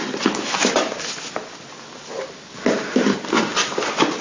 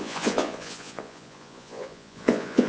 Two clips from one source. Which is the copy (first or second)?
second